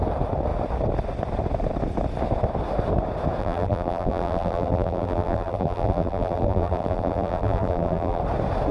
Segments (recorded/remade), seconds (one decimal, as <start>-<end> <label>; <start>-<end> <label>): 0.0-3.4 recorded; 3.4-8.2 remade; 8.2-8.7 recorded